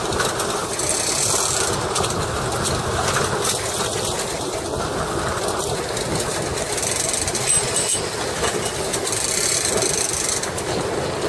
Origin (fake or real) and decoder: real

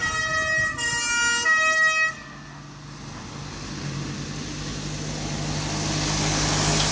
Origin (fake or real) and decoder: real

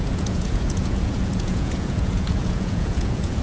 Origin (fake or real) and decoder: fake, vocoder, Vocos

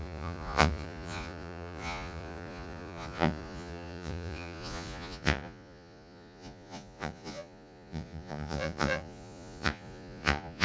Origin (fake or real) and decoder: fake, vocoder, Vocos